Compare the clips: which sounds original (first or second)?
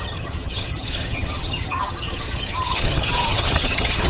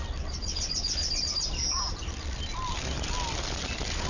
second